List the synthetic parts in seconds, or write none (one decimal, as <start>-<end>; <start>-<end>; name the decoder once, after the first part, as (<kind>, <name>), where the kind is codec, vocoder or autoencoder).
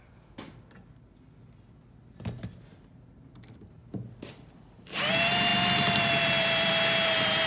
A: none